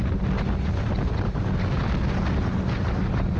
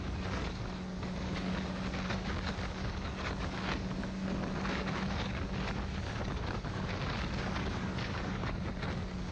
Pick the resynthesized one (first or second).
second